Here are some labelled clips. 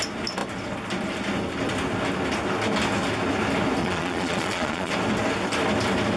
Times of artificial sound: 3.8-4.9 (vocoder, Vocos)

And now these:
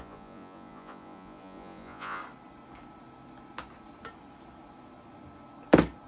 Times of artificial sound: 0.0-2.2 (vocoder, Vocos)

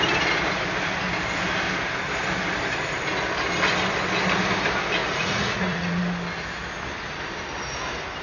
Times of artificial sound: 5.0-6.0 (vocoder, Vocos)

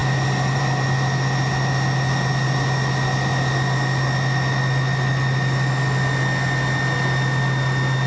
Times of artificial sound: none

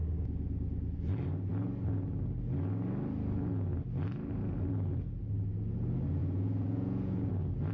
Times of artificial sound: 6.2-7.3 (vocoder, Vocos)

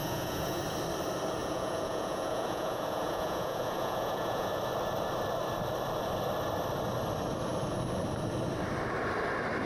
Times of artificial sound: 0.0-0.6 (vocoder, Vocos); 1.4-4.5

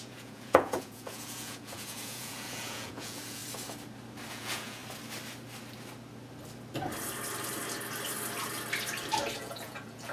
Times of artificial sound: 0.0-3.4 (vocoder, Vocos); 4.3-4.8; 9.4-10.1